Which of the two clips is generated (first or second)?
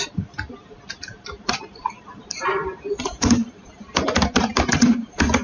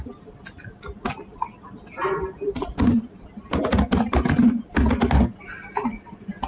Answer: first